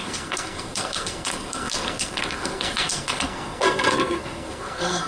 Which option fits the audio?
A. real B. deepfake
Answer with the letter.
B